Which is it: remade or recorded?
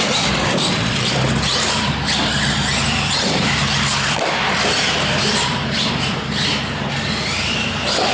remade